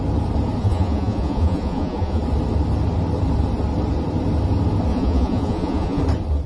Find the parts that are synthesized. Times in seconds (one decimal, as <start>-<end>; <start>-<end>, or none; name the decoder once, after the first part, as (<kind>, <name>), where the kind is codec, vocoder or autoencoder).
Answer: 0.6-2.2 (vocoder, Vocos); 4.9-6.0

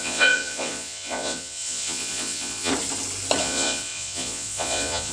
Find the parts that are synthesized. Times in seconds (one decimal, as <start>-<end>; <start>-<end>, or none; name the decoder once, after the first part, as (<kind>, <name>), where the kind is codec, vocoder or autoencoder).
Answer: 0.0-2.7 (vocoder, Vocos); 3.4-5.1

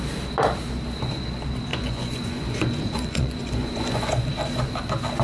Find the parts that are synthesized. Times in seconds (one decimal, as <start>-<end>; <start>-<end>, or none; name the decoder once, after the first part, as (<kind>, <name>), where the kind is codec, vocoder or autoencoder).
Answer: 1.7-4.3 (vocoder, Vocos)

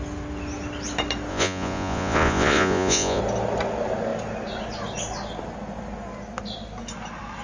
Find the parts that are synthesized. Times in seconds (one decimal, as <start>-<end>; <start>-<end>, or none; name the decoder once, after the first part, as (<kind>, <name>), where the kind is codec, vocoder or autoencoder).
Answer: 1.3-3.2 (vocoder, Vocos)

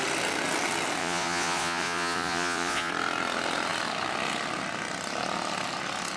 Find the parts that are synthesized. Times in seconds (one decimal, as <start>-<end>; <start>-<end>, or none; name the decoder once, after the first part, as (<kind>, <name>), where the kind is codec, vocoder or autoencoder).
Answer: 1.0-2.9 (vocoder, Vocos)

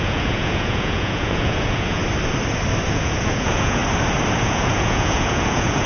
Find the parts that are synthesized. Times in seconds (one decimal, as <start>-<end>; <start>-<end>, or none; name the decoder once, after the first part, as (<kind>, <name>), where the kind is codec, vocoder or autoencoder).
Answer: 0.0-2.0 (vocoder, Vocos); 2.9-3.8; 4.4-5.9